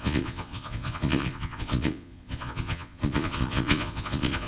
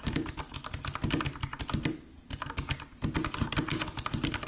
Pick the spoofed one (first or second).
first